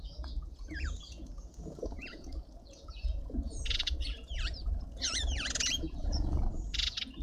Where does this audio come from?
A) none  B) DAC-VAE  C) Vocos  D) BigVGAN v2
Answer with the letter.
C